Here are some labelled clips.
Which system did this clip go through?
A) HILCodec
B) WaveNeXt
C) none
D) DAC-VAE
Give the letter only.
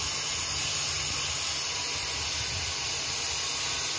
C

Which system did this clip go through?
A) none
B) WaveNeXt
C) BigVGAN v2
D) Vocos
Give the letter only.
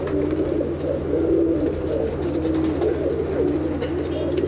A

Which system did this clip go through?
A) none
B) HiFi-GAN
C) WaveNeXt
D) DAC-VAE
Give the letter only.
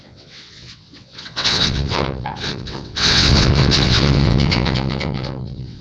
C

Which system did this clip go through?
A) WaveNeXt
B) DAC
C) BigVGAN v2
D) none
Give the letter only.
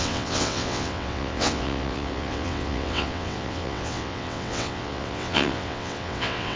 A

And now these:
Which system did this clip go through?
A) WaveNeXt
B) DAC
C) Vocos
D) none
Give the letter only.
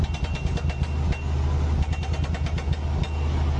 D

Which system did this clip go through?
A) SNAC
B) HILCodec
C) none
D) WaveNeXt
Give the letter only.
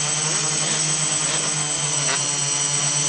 C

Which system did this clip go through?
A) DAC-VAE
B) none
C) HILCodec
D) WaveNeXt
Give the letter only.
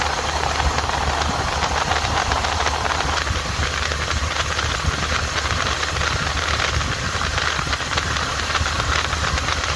B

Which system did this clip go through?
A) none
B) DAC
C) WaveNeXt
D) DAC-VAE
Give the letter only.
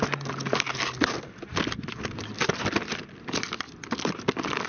A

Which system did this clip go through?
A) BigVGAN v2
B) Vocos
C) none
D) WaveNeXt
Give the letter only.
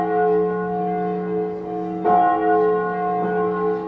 C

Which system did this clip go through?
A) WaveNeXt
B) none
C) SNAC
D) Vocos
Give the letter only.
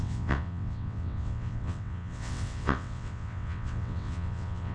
A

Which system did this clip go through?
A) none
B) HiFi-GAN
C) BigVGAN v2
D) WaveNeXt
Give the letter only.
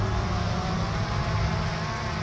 A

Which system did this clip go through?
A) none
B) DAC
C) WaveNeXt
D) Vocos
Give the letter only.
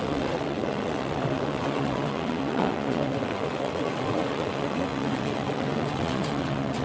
C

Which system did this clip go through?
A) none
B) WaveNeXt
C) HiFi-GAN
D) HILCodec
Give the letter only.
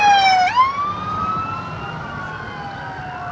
A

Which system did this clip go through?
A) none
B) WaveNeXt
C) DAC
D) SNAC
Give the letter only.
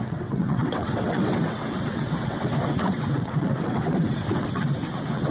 B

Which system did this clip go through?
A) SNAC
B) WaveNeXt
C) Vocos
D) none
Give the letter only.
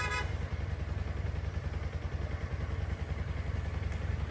D